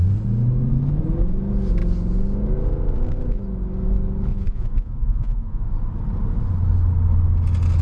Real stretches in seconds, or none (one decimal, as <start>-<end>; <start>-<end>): 0.0-4.3; 5.6-7.8